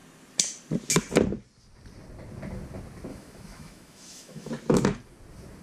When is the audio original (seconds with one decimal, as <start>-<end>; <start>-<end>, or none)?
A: 0.0-3.1; 4.5-5.6